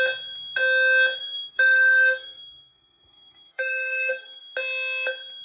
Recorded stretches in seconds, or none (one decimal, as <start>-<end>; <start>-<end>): 0.0-1.2; 4.4-5.4